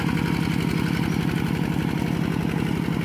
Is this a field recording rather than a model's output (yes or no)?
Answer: yes